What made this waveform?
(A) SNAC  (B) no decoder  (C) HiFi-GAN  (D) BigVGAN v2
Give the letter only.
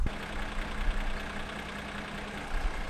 B